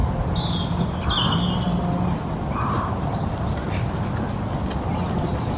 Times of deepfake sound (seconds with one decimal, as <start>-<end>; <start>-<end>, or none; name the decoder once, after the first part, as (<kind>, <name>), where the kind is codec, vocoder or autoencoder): 3.4-5.6 (vocoder, BigVGAN v2)